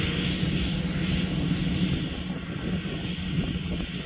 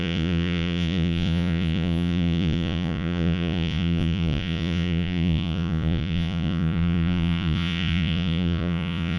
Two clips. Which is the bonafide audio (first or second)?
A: first